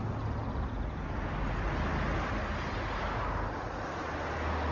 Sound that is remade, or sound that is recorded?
recorded